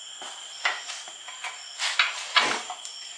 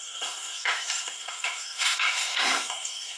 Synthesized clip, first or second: second